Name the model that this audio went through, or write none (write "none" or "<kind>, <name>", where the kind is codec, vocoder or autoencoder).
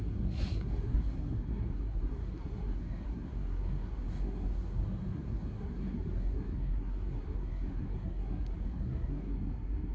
codec, SNAC